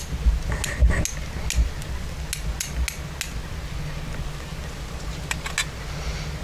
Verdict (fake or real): real